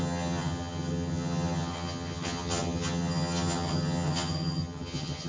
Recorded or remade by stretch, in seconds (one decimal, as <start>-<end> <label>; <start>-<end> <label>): 0.0-5.3 remade

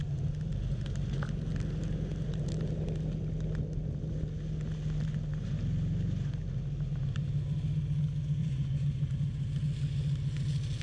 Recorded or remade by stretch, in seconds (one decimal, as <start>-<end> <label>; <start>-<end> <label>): 0.0-8.4 recorded; 8.4-9.1 remade; 9.1-10.8 recorded

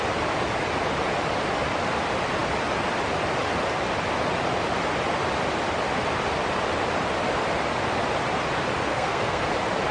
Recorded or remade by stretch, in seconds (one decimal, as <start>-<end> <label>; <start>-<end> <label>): 0.0-8.9 recorded; 8.9-9.5 remade; 9.5-9.9 recorded

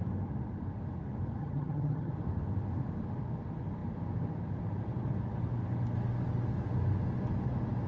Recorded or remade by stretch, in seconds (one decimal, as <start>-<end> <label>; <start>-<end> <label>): 0.0-1.4 recorded; 1.4-2.1 remade; 2.1-7.9 recorded

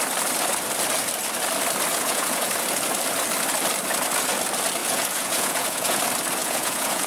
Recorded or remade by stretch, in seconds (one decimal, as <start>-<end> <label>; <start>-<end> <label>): 0.0-1.9 recorded; 1.9-2.5 remade; 2.5-4.8 recorded; 4.8-6.0 remade; 6.0-6.4 recorded; 6.4-7.1 remade

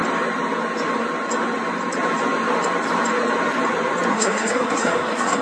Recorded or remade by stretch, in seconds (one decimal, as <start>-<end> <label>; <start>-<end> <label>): 0.0-4.1 recorded; 4.1-5.4 remade

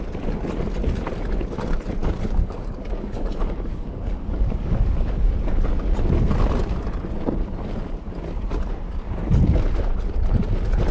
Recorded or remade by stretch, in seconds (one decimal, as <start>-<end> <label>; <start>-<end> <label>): 0.0-2.0 recorded; 2.0-5.3 remade; 5.3-10.9 recorded